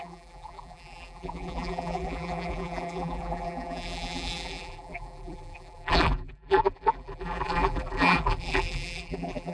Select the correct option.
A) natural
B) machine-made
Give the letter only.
B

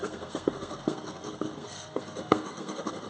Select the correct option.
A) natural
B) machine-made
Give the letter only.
B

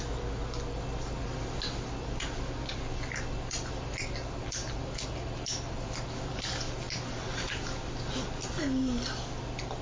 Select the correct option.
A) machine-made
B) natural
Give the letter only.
B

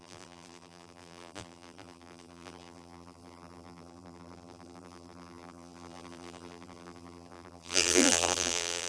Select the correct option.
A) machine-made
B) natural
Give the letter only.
A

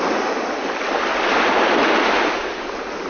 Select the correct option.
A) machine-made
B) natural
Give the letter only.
B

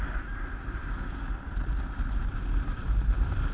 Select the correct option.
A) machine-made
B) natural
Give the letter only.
B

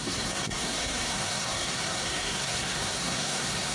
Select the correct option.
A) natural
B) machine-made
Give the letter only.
B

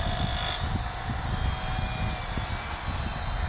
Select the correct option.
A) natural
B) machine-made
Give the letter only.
A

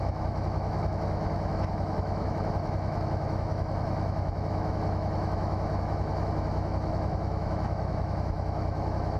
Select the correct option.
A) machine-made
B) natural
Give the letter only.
A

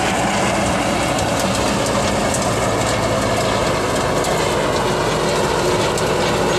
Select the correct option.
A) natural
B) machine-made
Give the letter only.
A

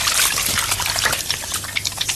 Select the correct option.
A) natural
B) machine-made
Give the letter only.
A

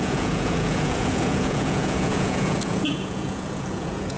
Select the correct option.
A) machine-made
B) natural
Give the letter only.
A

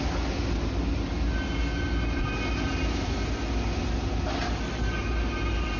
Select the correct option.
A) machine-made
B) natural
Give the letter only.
B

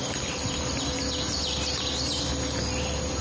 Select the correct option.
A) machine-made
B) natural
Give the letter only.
B